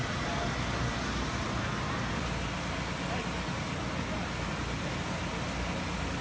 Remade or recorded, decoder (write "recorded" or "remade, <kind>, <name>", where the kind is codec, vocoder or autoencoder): recorded